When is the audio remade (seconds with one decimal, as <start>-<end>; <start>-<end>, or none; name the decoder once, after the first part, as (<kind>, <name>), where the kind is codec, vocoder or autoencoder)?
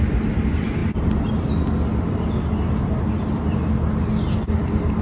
none